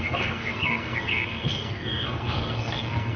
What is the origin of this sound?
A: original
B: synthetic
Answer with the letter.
B